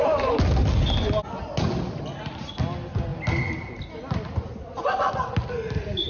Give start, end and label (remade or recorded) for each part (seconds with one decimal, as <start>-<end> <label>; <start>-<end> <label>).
0.0-6.1 recorded